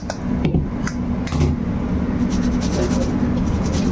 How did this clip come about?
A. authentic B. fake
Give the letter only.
A